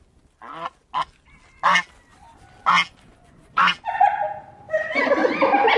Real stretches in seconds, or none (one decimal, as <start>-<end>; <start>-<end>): 0.0-3.1; 3.7-5.8